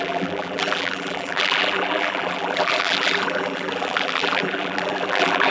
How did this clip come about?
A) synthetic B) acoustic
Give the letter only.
A